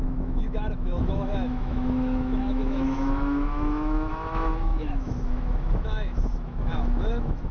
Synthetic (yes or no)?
yes